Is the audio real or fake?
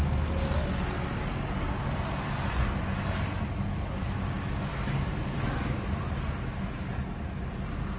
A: real